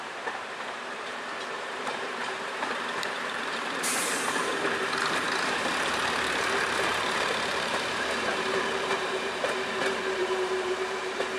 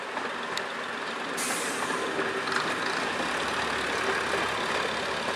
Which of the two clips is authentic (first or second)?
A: second